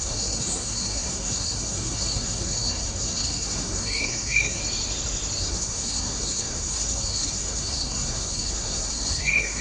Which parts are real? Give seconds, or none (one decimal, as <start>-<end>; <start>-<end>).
4.6-5.4